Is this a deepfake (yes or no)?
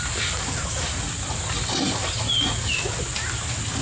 no